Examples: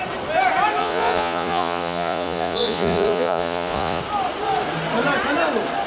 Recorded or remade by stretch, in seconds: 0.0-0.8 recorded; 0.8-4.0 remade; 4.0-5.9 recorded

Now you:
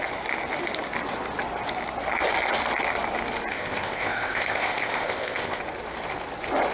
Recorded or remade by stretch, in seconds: 0.0-3.5 recorded; 3.5-5.6 remade; 5.6-6.7 recorded

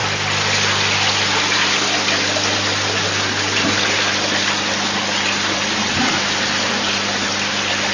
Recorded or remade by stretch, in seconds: 0.0-7.9 recorded